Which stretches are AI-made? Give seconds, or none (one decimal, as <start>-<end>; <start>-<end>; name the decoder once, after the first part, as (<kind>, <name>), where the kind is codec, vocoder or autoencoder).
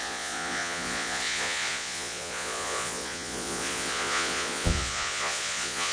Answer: 0.0-5.9 (vocoder, Vocos)